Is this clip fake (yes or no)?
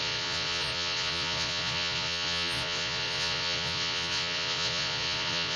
yes